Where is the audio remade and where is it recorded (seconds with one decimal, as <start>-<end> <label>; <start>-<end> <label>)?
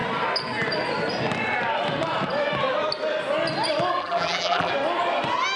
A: 0.0-4.0 recorded; 4.0-4.7 remade; 4.7-5.6 recorded